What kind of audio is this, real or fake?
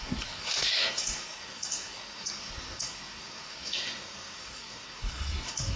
fake